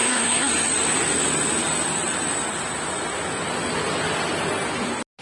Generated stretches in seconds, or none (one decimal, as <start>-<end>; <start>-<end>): 0.0-0.5